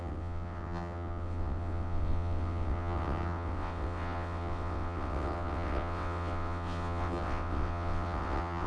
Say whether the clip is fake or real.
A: fake